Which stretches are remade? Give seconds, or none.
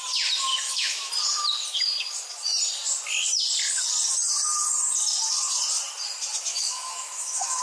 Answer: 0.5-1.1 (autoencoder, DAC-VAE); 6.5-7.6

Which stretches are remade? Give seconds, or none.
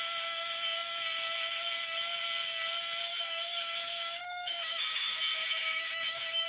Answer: 3.1-6.5 (autoencoder, DAC-VAE)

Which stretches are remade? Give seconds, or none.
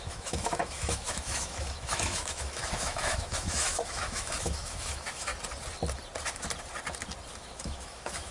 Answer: 0.0-5.3 (autoencoder, DAC-VAE); 7.3-8.3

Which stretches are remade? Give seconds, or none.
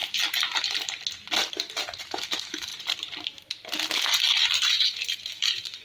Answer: 2.0-2.7 (autoencoder, DAC-VAE); 5.3-5.8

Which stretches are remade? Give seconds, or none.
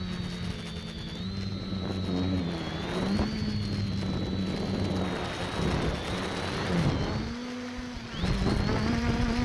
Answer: none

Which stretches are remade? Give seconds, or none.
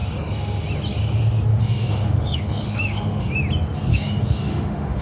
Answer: 1.5-3.3 (autoencoder, DAC-VAE); 3.9-5.0